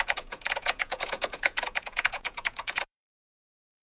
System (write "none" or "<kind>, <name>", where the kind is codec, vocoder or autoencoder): vocoder, Vocos